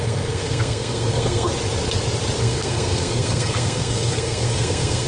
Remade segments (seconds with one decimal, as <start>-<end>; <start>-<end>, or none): 0.0-1.5; 2.4-5.1